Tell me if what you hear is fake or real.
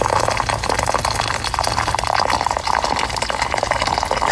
real